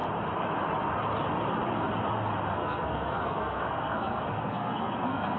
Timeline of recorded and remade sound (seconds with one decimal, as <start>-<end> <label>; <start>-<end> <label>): 0.0-2.5 recorded; 2.5-5.4 remade